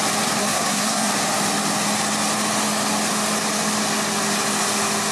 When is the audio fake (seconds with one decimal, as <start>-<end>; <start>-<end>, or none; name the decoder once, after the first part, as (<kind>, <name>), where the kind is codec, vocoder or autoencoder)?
0.4-1.1 (codec, SNAC)